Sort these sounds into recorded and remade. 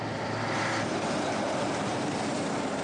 recorded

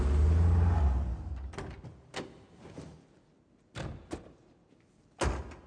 recorded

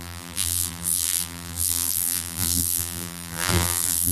remade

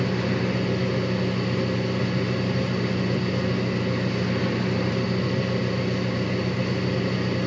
recorded